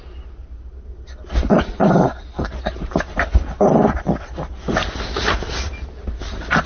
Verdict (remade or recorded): recorded